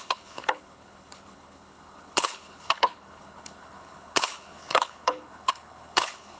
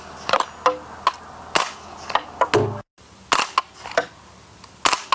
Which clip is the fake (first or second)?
first